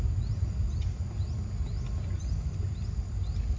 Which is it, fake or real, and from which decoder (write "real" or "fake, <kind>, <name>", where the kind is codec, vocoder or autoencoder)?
real